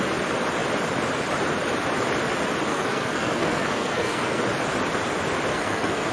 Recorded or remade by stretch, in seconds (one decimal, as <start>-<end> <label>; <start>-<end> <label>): 0.0-2.7 recorded; 2.7-4.4 remade; 4.4-5.5 recorded; 5.5-6.1 remade